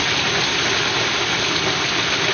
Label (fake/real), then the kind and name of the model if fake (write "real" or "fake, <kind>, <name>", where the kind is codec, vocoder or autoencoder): real